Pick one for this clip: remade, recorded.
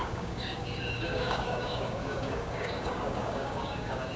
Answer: remade